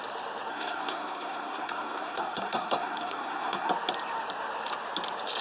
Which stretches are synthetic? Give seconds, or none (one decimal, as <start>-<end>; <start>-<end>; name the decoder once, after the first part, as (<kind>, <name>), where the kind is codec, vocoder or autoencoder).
0.5-3.7 (codec, SNAC)